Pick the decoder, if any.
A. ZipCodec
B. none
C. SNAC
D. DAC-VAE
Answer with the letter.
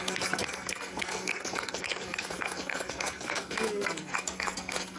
C